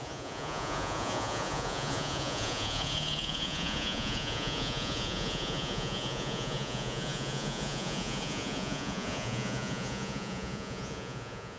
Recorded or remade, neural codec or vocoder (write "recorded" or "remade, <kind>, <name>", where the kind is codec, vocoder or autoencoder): remade, vocoder, Vocos